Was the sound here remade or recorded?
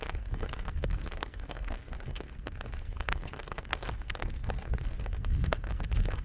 remade